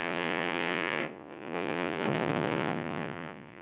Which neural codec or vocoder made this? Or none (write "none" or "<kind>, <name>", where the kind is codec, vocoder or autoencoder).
vocoder, Vocos